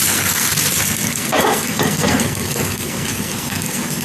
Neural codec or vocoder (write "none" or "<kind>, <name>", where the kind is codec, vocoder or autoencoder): codec, SNAC